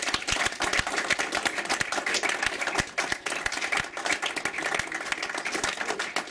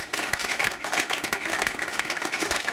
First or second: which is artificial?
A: second